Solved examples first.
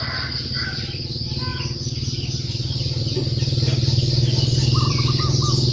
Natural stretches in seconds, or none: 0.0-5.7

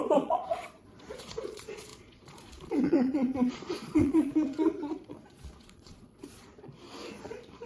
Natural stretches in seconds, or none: 6.7-7.2

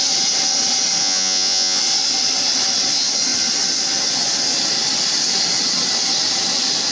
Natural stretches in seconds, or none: 0.0-1.0; 1.8-6.9

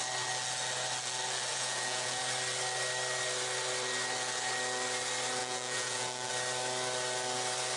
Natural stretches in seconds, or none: 0.0-1.5; 2.2-5.4; 6.3-7.8

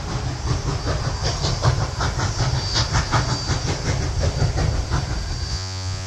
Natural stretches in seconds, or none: 0.0-5.5

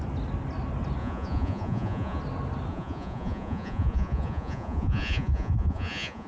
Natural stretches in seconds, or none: 0.0-1.0; 2.2-2.7

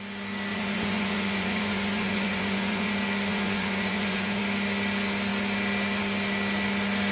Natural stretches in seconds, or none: 0.0-0.5; 2.9-3.3; 4.4-7.1

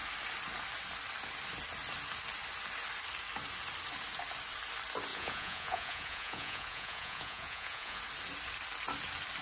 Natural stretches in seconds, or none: 0.0-5.1; 8.0-9.4